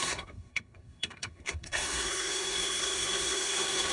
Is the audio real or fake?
fake